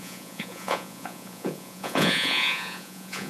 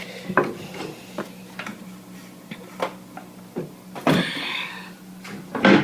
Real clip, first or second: second